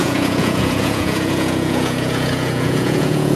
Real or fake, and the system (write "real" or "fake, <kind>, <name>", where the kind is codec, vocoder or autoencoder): fake, vocoder, Vocos